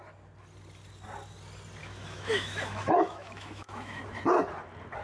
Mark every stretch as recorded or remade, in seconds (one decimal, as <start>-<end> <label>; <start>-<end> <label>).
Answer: 0.0-1.8 recorded; 1.8-4.0 remade; 4.0-5.0 recorded